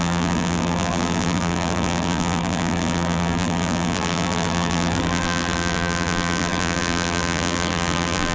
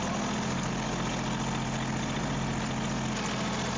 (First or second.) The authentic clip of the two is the second